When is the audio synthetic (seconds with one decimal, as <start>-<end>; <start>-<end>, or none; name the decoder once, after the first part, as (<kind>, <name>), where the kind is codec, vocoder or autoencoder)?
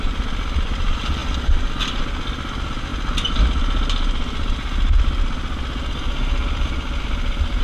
none